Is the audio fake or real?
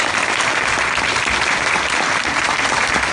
real